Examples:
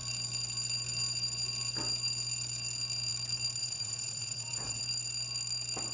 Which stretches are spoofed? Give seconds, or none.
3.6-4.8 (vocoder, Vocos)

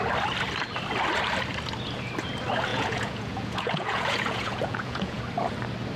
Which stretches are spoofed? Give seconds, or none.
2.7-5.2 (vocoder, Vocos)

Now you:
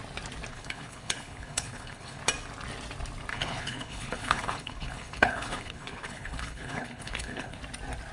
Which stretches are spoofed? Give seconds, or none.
0.5-2.2 (codec, HILCodec); 3.3-7.6